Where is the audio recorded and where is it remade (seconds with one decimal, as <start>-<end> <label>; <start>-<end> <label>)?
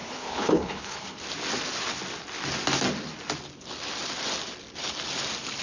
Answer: 0.0-1.2 remade; 1.2-5.6 recorded